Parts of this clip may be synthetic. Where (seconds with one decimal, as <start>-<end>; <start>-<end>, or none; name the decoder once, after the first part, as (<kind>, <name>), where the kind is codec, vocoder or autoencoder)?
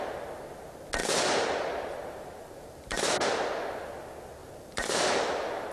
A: 1.0-3.1 (vocoder, BigVGAN v2); 4.4-5.1